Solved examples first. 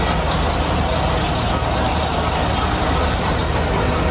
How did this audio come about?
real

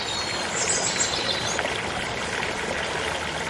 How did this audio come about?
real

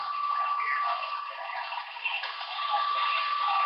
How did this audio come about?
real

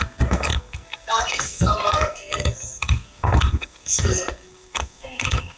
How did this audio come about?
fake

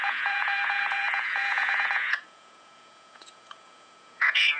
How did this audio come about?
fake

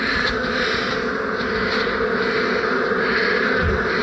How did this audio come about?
real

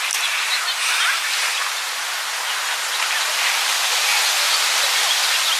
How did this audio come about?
real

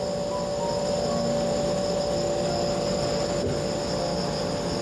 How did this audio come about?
real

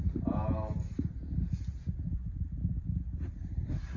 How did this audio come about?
real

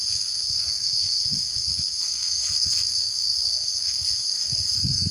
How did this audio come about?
fake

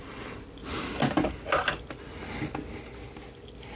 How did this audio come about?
real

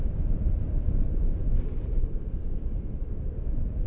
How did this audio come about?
real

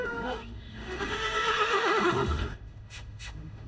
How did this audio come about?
fake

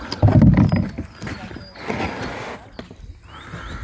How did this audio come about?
real